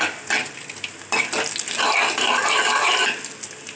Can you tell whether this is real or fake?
real